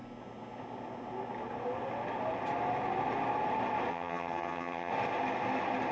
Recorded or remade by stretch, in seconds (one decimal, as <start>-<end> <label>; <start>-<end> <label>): 0.0-3.9 recorded; 3.9-4.9 remade; 4.9-5.9 recorded